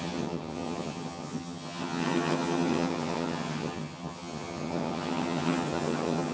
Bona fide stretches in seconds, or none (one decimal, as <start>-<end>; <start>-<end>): none